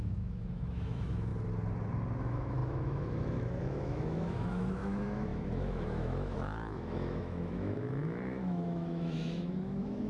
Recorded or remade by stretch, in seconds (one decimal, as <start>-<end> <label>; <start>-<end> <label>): 0.0-1.3 remade; 1.3-2.2 recorded; 2.2-10.1 remade